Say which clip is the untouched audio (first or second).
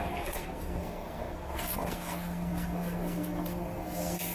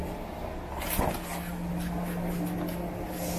second